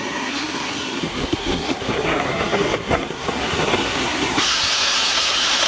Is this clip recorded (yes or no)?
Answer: no